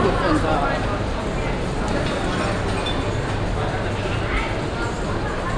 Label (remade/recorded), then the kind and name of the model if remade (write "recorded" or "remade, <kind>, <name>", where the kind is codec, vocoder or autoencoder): recorded